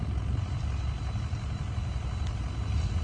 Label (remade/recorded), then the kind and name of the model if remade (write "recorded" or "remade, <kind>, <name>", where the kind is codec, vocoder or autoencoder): recorded